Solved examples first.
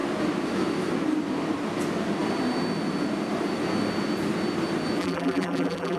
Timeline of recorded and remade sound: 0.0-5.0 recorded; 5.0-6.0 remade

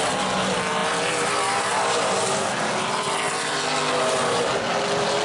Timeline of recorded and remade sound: 0.0-5.2 recorded

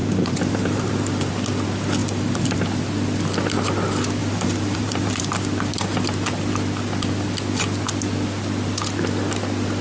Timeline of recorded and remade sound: 0.0-1.3 remade; 1.3-2.0 recorded; 2.0-2.6 remade; 2.6-4.2 recorded; 4.2-5.2 remade; 5.2-9.8 recorded

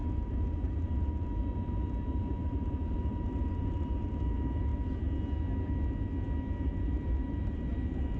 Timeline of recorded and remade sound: 0.0-4.7 remade; 4.7-6.6 recorded; 6.6-8.2 remade

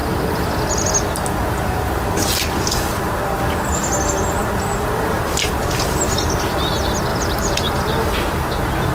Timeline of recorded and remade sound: 0.0-4.4 recorded; 4.4-5.0 remade; 5.0-7.1 recorded; 7.1-7.8 remade; 7.8-8.9 recorded